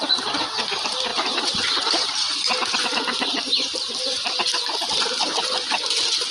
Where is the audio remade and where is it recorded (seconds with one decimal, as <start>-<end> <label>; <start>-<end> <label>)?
0.0-6.3 remade